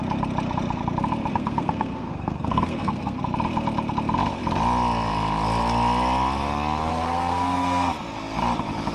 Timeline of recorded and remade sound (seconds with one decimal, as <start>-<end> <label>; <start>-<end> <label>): 0.0-1.3 recorded; 1.3-3.2 remade; 3.2-6.9 recorded; 6.9-7.9 remade; 7.9-8.9 recorded